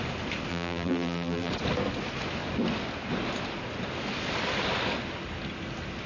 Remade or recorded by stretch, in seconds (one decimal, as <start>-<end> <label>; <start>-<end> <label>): 0.0-0.5 recorded; 0.5-1.5 remade; 1.5-6.1 recorded